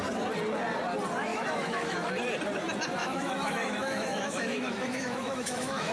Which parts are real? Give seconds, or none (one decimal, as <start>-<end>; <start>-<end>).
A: 0.0-1.3; 2.1-3.0